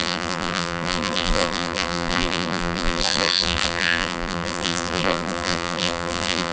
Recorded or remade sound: remade